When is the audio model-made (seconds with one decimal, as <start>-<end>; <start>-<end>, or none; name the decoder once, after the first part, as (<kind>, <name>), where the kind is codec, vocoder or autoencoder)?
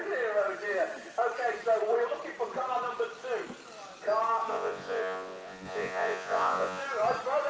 4.5-6.8 (vocoder, Vocos)